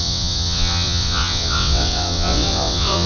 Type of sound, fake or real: fake